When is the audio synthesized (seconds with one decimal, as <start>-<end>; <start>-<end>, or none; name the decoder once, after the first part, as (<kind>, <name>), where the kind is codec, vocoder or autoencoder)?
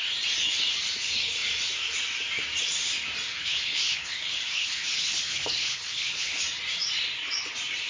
3.4-6.4 (codec, HILCodec)